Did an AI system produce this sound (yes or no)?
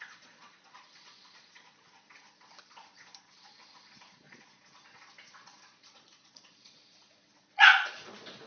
yes